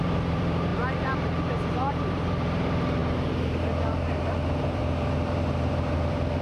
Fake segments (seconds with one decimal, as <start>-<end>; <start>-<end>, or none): 0.0-6.4